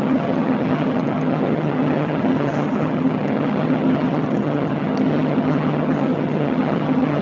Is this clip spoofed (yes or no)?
yes